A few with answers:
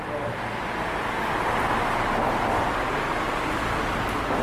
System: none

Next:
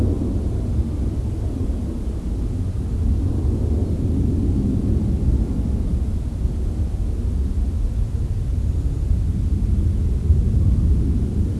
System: none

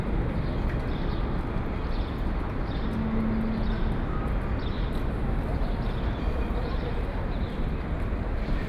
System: none